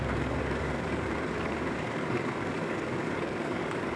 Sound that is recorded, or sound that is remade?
remade